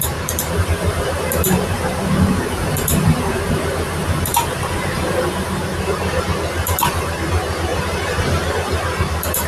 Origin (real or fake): fake